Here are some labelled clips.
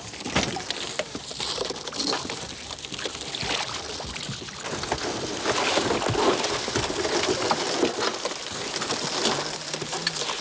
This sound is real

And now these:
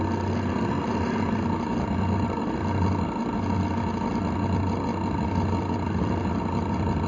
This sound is real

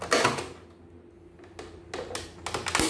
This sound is real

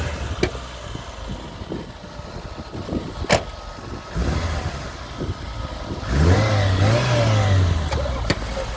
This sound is real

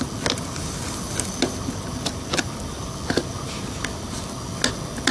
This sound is real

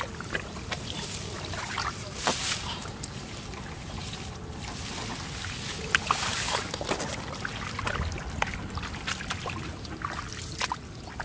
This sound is real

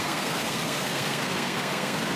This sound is fake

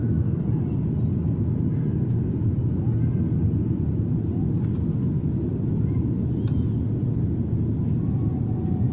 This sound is real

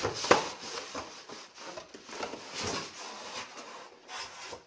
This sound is real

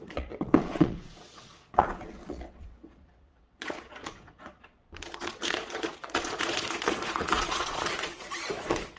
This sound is fake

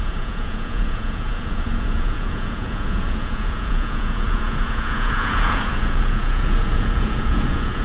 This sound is fake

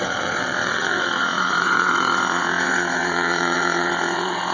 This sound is fake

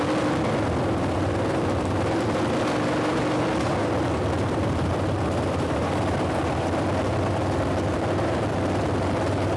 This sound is fake